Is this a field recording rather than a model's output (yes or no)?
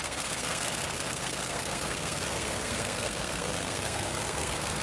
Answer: no